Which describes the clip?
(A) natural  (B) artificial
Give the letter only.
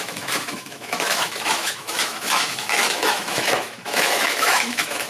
B